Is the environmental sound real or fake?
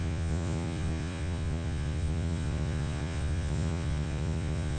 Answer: fake